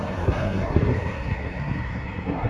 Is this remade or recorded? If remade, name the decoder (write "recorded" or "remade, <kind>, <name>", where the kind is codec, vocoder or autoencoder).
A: remade, codec, SNAC